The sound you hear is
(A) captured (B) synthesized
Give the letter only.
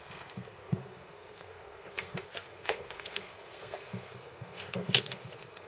B